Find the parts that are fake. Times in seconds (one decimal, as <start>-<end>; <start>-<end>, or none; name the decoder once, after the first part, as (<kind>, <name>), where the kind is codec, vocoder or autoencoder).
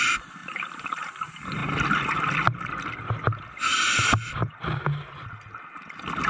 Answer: 0.4-1.1 (vocoder, BigVGAN v2)